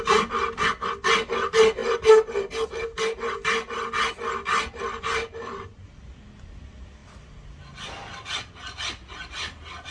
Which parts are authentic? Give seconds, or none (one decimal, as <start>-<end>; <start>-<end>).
0.0-7.0; 7.6-9.9